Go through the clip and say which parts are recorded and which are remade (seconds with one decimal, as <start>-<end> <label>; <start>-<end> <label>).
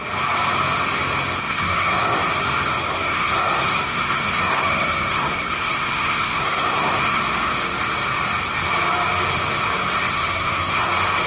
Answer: 0.0-1.4 recorded; 1.4-2.3 remade; 2.3-2.9 recorded; 2.9-7.2 remade; 7.2-10.1 recorded; 10.1-10.9 remade; 10.9-11.3 recorded